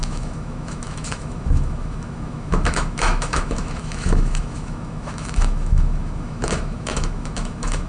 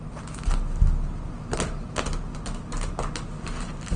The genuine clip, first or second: second